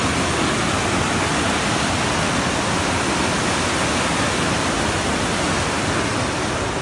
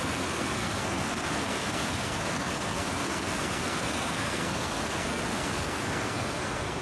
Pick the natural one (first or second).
first